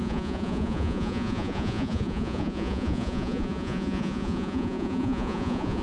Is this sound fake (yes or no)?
yes